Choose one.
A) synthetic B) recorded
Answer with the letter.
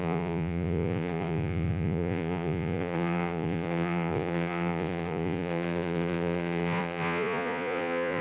A